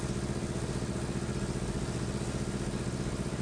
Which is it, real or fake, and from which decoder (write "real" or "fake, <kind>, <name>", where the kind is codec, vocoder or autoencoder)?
real